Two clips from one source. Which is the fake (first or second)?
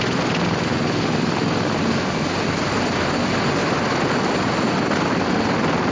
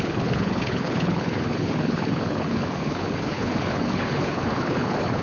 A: second